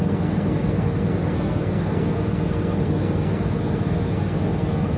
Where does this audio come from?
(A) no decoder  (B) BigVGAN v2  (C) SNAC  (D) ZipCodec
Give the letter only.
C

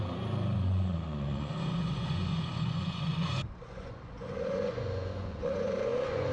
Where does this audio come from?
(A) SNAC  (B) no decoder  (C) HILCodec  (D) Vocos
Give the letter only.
D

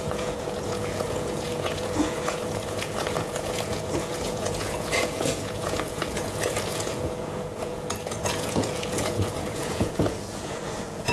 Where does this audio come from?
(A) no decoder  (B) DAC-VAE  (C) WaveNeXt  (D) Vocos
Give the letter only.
D